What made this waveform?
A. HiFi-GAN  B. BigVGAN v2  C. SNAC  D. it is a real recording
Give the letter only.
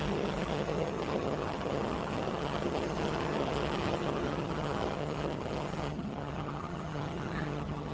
A